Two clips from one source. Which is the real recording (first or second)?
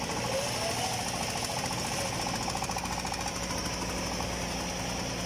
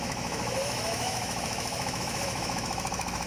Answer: first